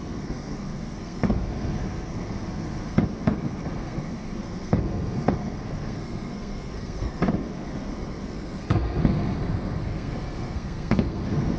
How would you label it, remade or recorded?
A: remade